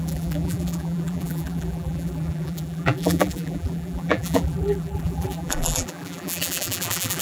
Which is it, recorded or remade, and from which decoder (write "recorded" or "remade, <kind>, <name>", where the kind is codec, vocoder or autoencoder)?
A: remade, vocoder, BigVGAN v2